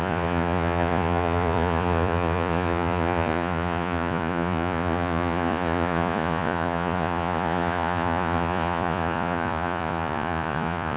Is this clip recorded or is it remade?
remade